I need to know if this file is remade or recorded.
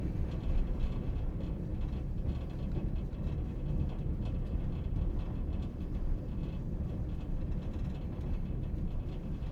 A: remade